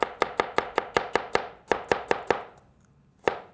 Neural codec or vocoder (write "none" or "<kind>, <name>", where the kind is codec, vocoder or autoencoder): none